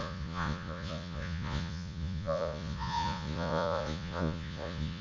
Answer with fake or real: fake